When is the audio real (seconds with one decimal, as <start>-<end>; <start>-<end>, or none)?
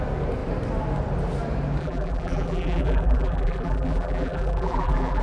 0.0-1.8